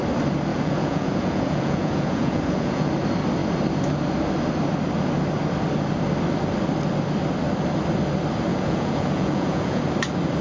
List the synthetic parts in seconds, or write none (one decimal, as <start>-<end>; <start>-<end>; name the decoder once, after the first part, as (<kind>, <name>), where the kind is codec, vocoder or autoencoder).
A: 0.5-2.9 (vocoder, Vocos); 8.5-9.8